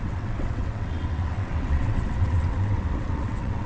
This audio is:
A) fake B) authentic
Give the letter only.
A